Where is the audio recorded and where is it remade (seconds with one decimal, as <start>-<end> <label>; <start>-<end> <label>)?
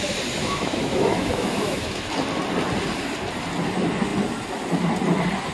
0.0-0.4 recorded; 0.4-2.1 remade; 2.1-5.5 recorded